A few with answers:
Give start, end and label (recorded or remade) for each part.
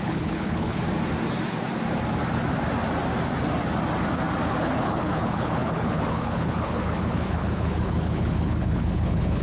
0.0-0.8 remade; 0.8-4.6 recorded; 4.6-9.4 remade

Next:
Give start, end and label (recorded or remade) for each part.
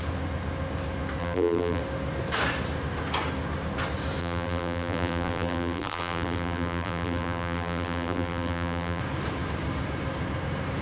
0.0-1.2 recorded; 1.2-1.8 remade; 1.8-4.2 recorded; 4.2-9.0 remade; 9.0-10.8 recorded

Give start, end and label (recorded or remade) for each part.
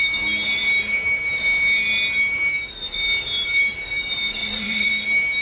0.0-4.4 recorded; 4.4-4.9 remade; 4.9-5.4 recorded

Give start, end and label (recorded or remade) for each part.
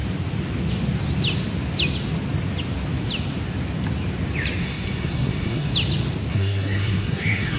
0.0-4.6 recorded; 4.6-5.7 remade; 5.7-6.3 recorded; 6.3-7.6 remade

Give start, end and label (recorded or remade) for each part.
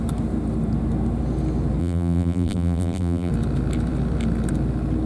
0.0-1.8 recorded; 1.8-3.3 remade; 3.3-5.1 recorded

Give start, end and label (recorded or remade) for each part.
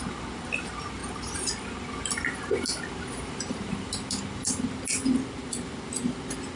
0.0-6.6 recorded